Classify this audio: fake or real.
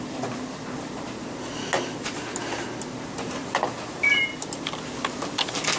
real